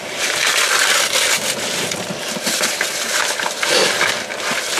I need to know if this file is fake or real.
fake